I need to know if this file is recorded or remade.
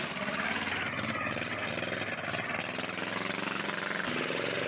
recorded